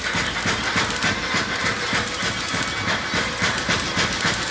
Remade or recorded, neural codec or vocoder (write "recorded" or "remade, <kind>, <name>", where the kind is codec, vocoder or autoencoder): recorded